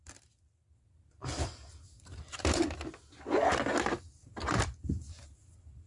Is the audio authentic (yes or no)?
yes